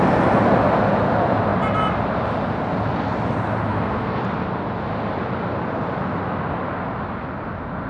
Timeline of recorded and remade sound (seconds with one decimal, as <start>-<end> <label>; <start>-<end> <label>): 0.0-3.7 recorded; 3.7-4.2 remade; 4.2-7.9 recorded